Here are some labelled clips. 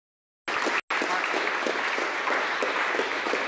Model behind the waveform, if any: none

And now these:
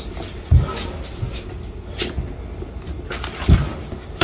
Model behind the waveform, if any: none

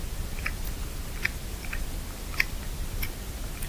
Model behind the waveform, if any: none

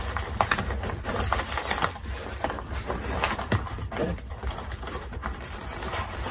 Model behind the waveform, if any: vocoder, BigVGAN v2